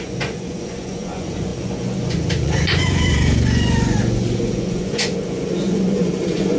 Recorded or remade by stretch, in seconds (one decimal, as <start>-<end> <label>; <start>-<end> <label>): 0.0-6.6 remade